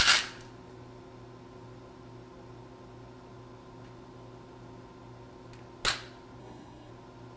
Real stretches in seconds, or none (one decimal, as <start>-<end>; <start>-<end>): 0.0-6.4; 6.9-7.4